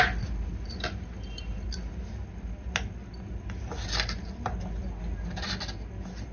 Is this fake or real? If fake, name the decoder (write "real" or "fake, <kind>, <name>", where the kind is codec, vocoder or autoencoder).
real